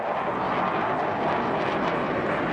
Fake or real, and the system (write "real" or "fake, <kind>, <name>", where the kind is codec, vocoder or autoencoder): real